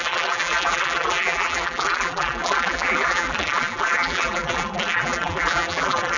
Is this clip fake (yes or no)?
yes